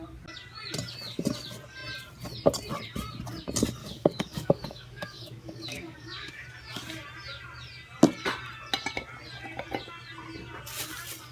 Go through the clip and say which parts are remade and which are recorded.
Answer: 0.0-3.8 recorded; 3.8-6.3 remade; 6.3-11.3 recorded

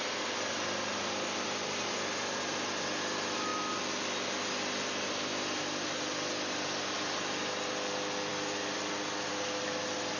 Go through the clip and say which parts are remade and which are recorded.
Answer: 0.0-10.2 recorded

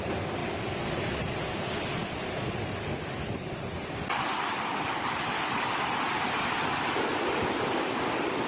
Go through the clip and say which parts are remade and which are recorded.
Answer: 0.0-0.4 remade; 0.4-0.9 recorded; 0.9-7.1 remade; 7.1-8.5 recorded

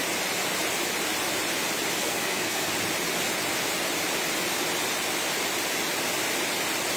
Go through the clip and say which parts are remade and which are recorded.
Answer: 0.0-2.0 recorded; 2.0-2.7 remade; 2.7-7.0 recorded